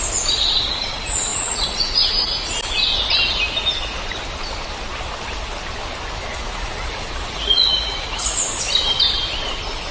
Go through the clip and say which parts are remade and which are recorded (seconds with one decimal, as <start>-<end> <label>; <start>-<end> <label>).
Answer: 0.0-1.3 recorded; 1.3-2.5 remade; 2.5-6.3 recorded; 6.3-8.7 remade; 8.7-9.9 recorded